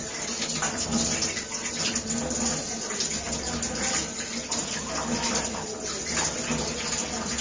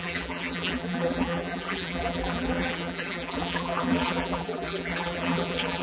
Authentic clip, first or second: first